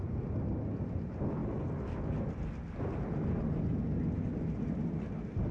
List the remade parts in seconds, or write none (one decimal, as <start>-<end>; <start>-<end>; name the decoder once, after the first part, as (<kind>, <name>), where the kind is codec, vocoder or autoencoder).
none